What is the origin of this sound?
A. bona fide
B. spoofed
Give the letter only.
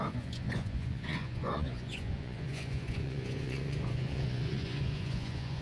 B